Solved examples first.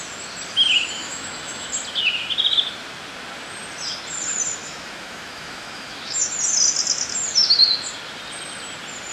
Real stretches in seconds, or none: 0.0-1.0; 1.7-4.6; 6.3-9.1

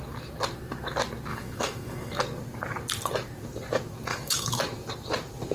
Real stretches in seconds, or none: 0.0-1.3; 2.2-4.1; 4.6-5.5

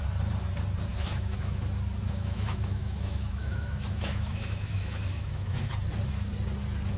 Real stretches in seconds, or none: 0.0-0.9; 1.6-2.0; 5.7-7.0

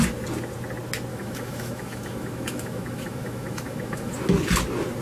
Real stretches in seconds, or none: 0.0-1.1; 4.1-5.0

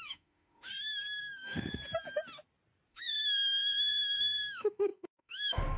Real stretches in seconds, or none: 0.7-1.2; 1.8-2.9

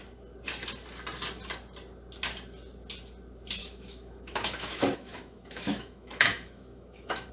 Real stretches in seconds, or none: 0.0-3.6

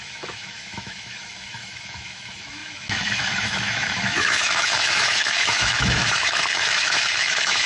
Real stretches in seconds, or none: none

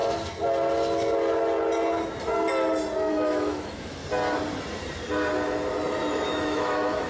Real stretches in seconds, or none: 0.0-3.1; 4.0-6.1